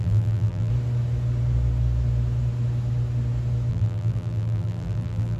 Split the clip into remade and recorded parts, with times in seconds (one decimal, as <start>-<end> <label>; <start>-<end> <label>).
0.0-0.7 remade; 0.7-3.7 recorded; 3.7-5.4 remade